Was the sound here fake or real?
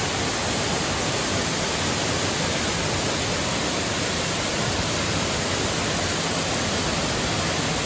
real